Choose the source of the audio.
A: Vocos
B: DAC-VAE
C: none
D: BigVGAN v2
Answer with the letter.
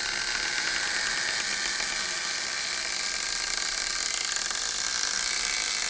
C